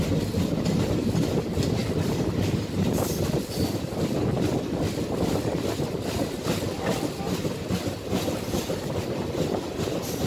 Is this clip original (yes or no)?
yes